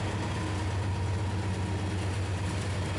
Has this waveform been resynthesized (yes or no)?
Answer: no